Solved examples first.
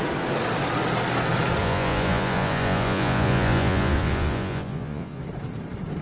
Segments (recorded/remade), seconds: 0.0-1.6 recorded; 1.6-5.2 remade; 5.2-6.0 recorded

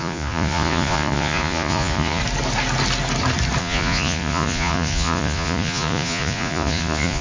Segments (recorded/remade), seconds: 0.0-2.2 remade; 2.2-3.6 recorded; 3.6-7.2 remade

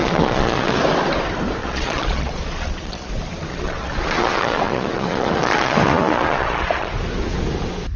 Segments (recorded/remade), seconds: 0.0-0.8 remade; 0.8-1.6 recorded; 1.6-3.1 remade; 3.1-3.5 recorded; 3.5-6.9 remade; 6.9-8.0 recorded

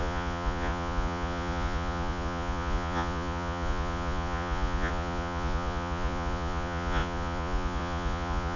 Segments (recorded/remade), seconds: 0.0-8.6 remade

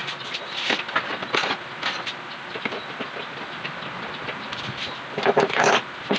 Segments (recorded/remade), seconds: 0.0-6.2 recorded

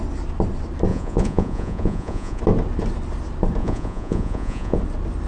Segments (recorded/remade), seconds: 0.0-0.9 recorded; 0.9-2.4 remade; 2.4-3.6 recorded; 3.6-4.8 remade; 4.8-5.3 recorded

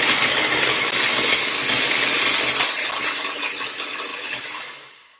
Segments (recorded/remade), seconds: 0.0-5.2 recorded

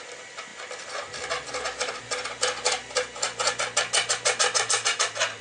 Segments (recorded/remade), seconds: 0.0-5.4 recorded